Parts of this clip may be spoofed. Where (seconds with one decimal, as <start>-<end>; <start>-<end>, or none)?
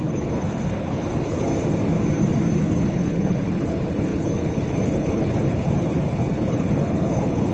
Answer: 0.0-1.5; 2.6-7.5